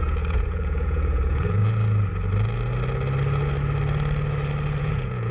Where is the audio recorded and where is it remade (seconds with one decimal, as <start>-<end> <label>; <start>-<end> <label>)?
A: 0.0-1.6 remade; 1.6-4.8 recorded; 4.8-5.3 remade